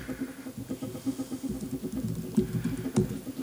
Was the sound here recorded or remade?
recorded